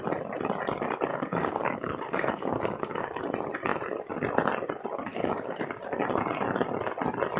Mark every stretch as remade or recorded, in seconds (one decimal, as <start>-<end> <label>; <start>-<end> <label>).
0.0-1.1 recorded; 1.1-3.2 remade; 3.2-5.1 recorded; 5.1-5.8 remade; 5.8-7.4 recorded